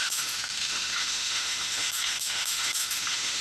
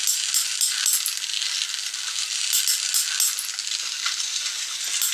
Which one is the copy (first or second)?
first